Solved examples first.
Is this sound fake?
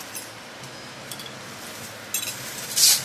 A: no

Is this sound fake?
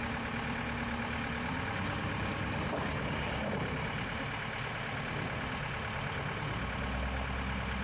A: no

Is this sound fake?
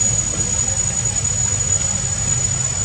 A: no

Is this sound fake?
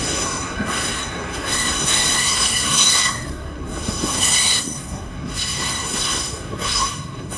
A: yes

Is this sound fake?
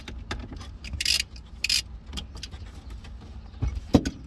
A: no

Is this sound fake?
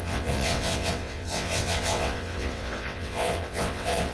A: yes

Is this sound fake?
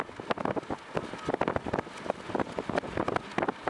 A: no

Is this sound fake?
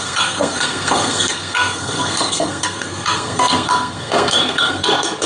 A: yes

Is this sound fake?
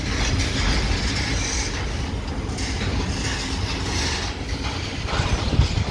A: no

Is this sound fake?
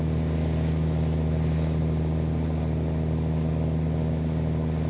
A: no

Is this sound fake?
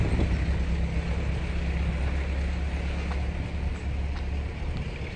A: no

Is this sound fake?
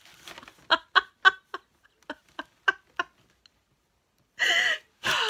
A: no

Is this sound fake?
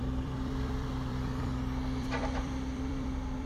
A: yes